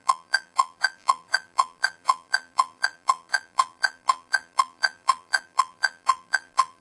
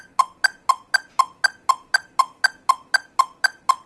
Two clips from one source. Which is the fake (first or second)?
first